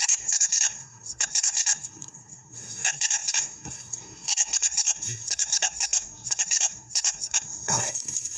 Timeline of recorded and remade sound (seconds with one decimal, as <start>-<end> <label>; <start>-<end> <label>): 0.0-8.4 remade